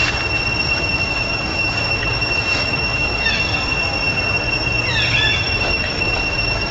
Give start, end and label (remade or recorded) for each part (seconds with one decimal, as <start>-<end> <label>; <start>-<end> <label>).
0.0-0.7 recorded; 0.7-3.5 remade; 3.5-5.1 recorded; 5.1-6.7 remade